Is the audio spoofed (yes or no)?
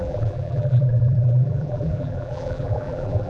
yes